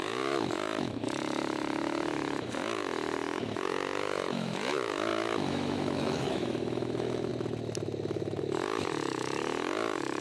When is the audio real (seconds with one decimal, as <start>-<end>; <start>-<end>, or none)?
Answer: 7.3-8.4